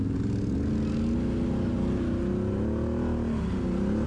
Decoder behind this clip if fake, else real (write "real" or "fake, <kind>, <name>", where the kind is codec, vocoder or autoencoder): real